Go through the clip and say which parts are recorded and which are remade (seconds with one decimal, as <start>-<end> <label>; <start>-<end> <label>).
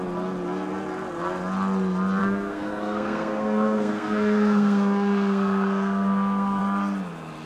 0.0-2.2 recorded; 2.2-6.6 remade; 6.6-7.5 recorded